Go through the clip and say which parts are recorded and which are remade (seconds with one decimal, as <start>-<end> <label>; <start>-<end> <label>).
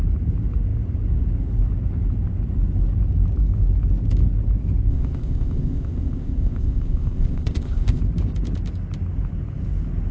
0.0-4.9 recorded; 4.9-8.0 remade; 8.0-10.1 recorded